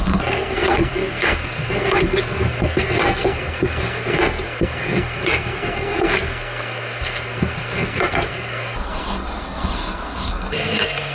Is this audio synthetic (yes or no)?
yes